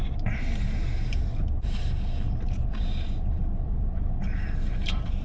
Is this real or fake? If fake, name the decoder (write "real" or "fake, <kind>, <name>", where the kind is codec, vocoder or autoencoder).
fake, vocoder, BigVGAN v2